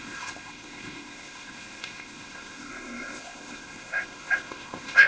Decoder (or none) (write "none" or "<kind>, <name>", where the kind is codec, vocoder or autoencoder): codec, ZipCodec